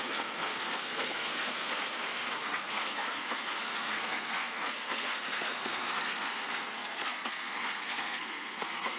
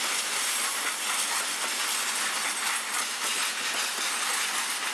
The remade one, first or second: first